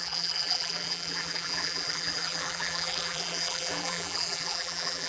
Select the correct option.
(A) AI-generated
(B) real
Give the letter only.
A